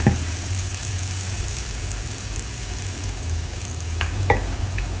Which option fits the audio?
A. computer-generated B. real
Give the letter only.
A